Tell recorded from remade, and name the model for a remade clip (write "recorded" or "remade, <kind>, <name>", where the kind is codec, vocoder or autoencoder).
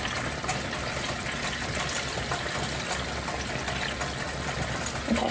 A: recorded